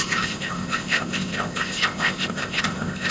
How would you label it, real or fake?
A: fake